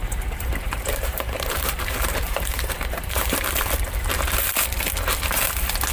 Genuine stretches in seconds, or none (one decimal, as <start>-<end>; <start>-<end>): 3.5-5.9